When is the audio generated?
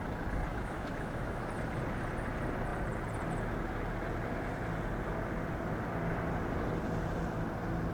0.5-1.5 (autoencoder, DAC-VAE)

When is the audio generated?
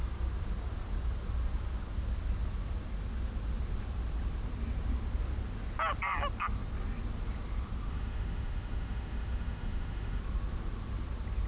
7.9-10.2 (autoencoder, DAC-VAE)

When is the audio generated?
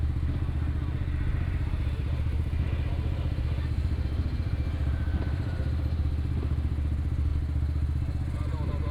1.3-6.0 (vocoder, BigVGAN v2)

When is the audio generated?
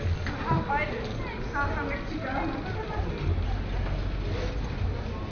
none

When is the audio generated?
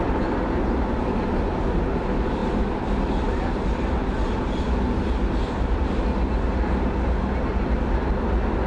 none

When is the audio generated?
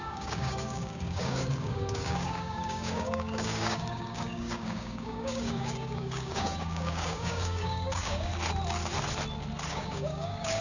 0.0-8.3 (codec, DAC); 9.7-10.6